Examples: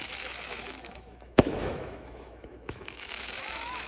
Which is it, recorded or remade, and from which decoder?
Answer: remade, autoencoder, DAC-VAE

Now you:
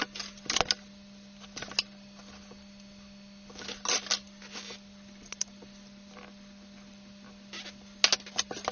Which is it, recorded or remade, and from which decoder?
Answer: recorded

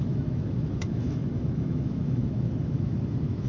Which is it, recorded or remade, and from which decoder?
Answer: remade, autoencoder, DAC-VAE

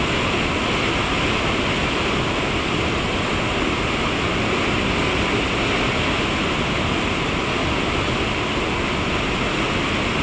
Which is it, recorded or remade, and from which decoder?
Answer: recorded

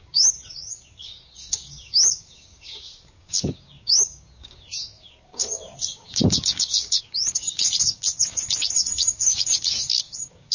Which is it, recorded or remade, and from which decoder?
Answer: remade, codec, DAC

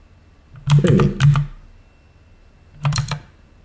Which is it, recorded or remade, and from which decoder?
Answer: recorded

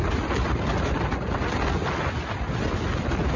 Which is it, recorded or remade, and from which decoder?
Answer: recorded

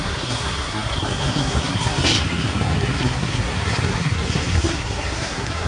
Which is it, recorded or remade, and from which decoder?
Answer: remade, codec, SNAC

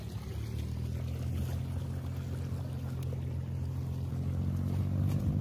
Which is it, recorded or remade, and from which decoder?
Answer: recorded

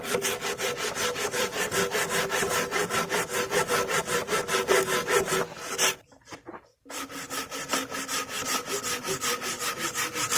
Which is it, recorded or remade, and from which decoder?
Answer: recorded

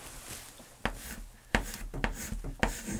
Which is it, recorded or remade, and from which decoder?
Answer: recorded